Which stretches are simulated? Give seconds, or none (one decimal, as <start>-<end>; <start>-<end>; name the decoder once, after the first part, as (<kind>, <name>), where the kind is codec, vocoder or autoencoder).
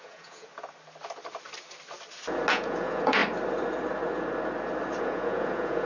0.0-0.5 (vocoder, Vocos); 2.5-3.2; 5.0-5.9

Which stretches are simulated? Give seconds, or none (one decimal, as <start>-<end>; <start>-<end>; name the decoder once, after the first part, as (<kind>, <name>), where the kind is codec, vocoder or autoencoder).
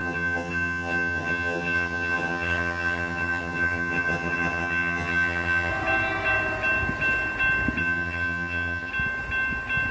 0.0-5.7 (vocoder, HiFi-GAN); 7.8-8.9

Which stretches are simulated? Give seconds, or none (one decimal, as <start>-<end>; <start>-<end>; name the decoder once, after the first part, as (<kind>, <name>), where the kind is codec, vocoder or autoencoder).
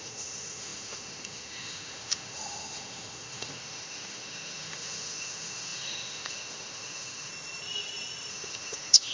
0.0-7.3 (autoencoder, DAC-VAE); 8.3-9.1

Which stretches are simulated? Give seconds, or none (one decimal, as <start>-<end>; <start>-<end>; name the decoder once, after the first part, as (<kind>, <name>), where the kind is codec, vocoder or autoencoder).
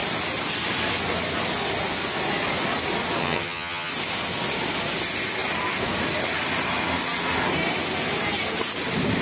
3.2-3.9 (vocoder, HiFi-GAN)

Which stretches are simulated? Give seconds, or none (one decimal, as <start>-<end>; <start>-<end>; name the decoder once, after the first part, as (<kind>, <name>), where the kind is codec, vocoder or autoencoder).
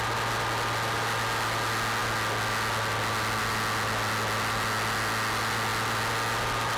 none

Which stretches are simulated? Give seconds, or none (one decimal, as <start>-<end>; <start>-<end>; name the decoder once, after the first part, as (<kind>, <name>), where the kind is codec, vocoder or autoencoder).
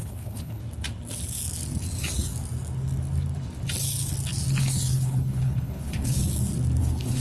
0.0-0.6 (codec, HILCodec); 4.9-6.2; 6.8-7.2